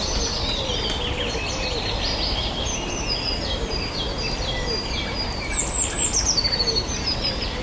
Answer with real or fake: real